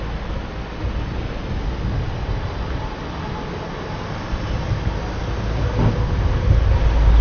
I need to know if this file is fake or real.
real